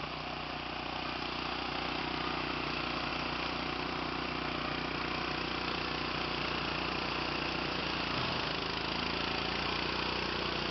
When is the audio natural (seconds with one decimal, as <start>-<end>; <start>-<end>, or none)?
0.0-10.7